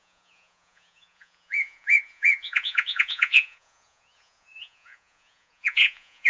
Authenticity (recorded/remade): remade